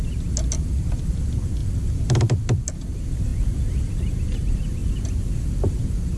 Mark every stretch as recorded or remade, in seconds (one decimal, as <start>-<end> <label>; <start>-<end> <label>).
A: 0.0-6.2 recorded